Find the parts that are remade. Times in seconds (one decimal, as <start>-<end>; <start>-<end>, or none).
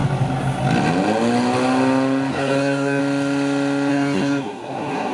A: 2.3-3.0; 3.9-5.1